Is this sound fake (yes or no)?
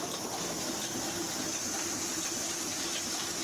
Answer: no